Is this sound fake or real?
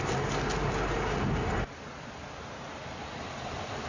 real